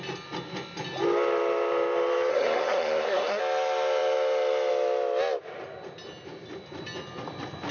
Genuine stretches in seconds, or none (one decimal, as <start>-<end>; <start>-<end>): 0.0-2.3; 3.4-7.7